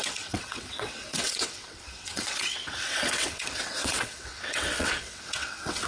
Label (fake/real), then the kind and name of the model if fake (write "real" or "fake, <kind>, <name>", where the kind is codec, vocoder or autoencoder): fake, vocoder, WaveNeXt